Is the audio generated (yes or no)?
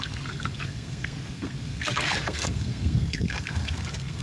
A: yes